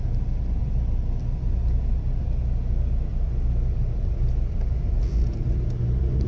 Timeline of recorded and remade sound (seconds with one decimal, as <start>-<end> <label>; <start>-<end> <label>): 0.0-6.3 recorded